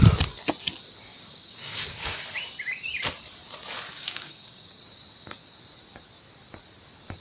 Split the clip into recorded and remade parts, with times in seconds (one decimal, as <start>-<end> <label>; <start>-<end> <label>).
0.0-1.1 recorded; 1.1-2.2 remade; 2.2-3.9 recorded; 3.9-4.8 remade; 4.8-7.2 recorded